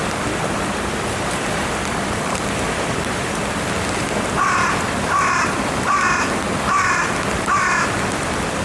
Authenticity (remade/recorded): recorded